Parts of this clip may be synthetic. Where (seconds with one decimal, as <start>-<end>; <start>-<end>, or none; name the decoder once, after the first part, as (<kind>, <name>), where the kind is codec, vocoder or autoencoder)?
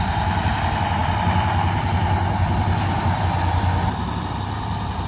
0.0-5.1 (vocoder, BigVGAN v2)